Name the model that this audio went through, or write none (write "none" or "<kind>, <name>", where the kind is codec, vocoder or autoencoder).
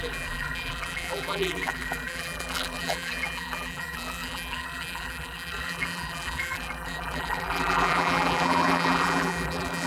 vocoder, BigVGAN v2